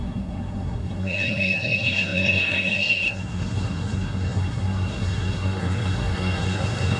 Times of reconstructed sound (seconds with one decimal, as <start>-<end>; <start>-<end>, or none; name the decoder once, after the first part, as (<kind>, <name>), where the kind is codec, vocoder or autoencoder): 0.0-7.0 (codec, SNAC)